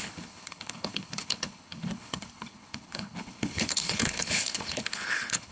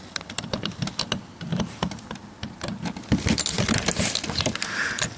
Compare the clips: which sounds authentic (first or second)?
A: second